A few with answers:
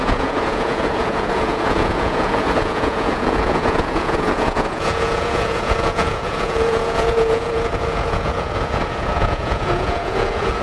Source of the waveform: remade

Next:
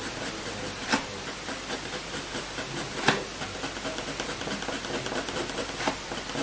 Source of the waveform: remade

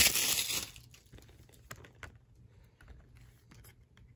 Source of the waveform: recorded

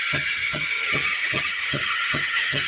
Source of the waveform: remade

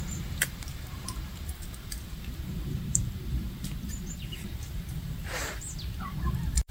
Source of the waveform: remade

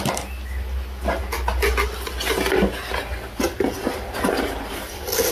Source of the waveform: recorded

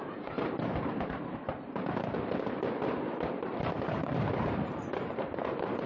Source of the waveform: remade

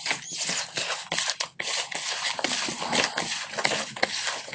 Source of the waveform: recorded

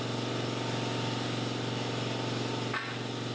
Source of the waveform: recorded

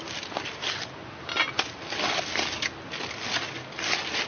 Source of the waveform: recorded